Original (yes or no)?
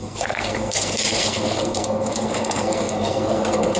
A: no